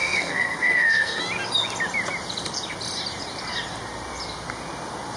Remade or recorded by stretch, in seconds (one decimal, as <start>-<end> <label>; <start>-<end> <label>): 0.0-1.2 remade; 1.2-5.2 recorded